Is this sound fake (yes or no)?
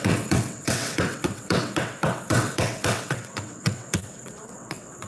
yes